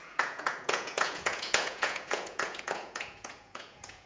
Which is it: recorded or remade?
remade